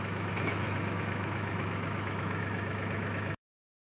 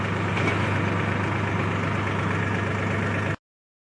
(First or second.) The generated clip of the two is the first